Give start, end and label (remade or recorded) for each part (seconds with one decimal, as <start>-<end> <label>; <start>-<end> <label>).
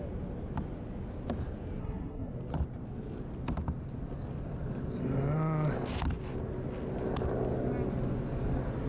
0.0-1.8 recorded; 1.8-2.3 remade; 2.3-8.9 recorded